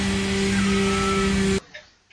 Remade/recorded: recorded